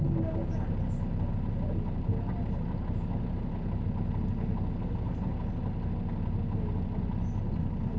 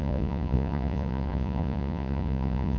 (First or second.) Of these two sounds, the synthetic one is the second